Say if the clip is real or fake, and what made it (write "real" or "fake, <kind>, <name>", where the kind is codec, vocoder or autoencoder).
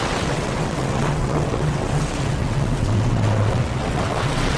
fake, vocoder, WaveNeXt